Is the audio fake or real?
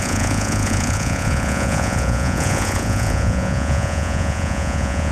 fake